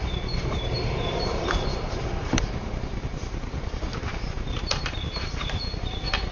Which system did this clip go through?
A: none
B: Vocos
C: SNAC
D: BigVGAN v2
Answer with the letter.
D